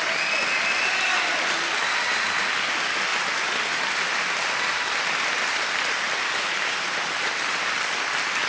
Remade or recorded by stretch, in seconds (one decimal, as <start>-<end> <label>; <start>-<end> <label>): 0.0-8.5 recorded